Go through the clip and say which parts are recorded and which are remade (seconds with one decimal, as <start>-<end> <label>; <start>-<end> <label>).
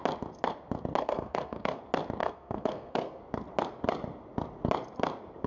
0.0-1.0 recorded; 1.0-1.8 remade; 1.8-2.2 recorded; 2.2-3.2 remade; 3.2-5.5 recorded